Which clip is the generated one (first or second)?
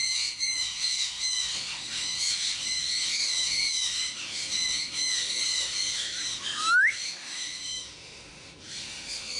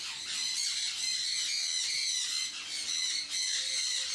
first